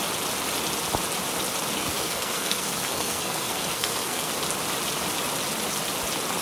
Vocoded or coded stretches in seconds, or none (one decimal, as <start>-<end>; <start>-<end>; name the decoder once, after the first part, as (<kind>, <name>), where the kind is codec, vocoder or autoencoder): 1.8-4.3 (codec, SNAC)